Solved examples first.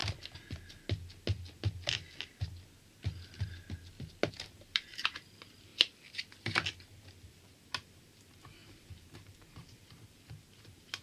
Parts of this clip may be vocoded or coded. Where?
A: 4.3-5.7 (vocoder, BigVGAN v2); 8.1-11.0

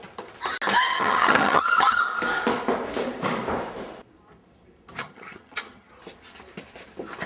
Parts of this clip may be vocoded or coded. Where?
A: 0.9-2.0 (vocoder, HiFi-GAN); 5.0-5.9

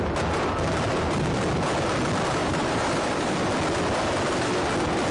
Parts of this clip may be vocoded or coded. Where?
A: 2.4-3.4 (vocoder, BigVGAN v2)

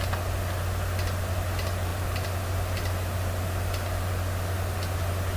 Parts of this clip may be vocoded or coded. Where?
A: 1.9-4.1 (vocoder, BigVGAN v2)

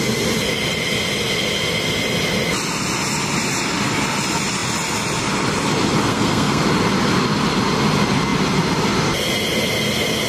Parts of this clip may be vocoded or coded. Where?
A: 6.1-6.6 (codec, SNAC)

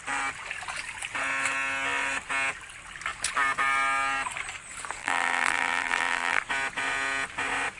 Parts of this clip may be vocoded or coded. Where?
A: 5.0-6.4 (vocoder, BigVGAN v2)

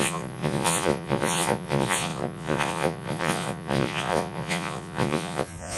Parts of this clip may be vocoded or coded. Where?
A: 0.0-5.8 (vocoder, Vocos)